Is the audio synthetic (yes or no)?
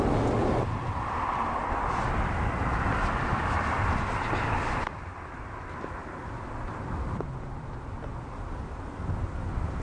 yes